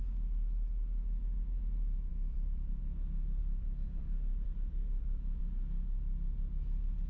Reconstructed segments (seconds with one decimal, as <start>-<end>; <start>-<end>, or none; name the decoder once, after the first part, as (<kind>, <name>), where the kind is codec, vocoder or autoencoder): 2.1-2.8 (vocoder, BigVGAN v2); 3.4-5.4